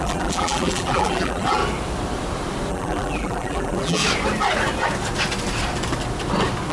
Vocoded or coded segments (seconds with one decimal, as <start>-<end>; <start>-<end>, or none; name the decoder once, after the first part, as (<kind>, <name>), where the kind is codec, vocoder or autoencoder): 0.0-1.6 (vocoder, BigVGAN v2); 2.7-4.0